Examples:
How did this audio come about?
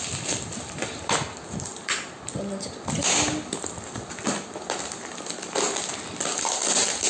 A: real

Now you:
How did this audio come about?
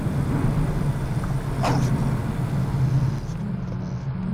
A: real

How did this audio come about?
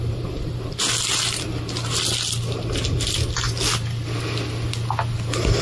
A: real